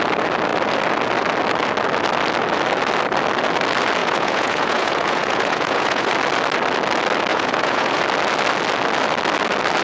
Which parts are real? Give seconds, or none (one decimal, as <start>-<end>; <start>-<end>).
0.0-4.0; 6.1-7.3; 8.0-9.8